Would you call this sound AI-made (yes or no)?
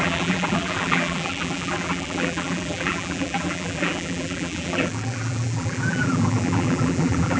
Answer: yes